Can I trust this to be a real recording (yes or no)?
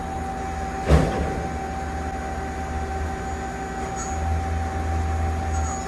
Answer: yes